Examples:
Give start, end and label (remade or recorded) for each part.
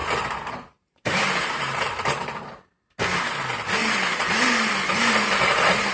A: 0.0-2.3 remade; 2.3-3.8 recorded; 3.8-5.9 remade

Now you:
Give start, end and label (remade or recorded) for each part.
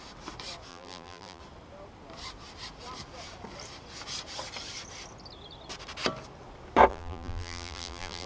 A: 0.0-0.7 recorded; 0.7-1.4 remade; 1.4-6.9 recorded; 6.9-8.3 remade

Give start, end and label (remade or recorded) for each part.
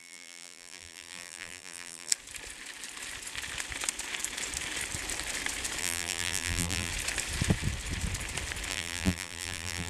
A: 0.0-2.1 remade; 2.1-5.8 recorded; 5.8-6.9 remade; 6.9-8.7 recorded; 8.7-9.9 remade